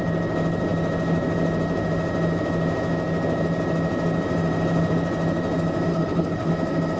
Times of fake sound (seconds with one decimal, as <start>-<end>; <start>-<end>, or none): 5.9-6.5